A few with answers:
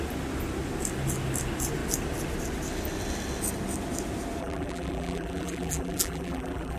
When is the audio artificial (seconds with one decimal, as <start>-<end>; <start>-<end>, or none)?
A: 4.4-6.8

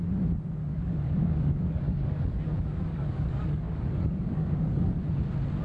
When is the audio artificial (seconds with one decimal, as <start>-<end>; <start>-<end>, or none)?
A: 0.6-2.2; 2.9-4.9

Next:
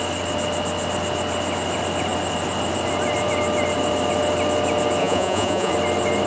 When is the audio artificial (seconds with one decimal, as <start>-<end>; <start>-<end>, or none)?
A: 5.0-5.7